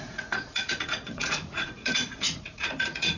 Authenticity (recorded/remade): remade